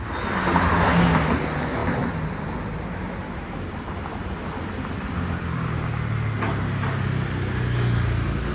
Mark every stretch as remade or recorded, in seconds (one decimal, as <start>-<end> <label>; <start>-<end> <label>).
0.0-8.5 recorded